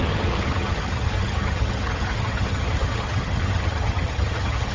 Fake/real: fake